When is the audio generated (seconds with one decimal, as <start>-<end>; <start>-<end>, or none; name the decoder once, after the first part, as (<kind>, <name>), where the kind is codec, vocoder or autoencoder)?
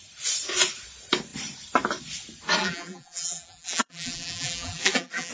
2.6-5.3 (vocoder, BigVGAN v2)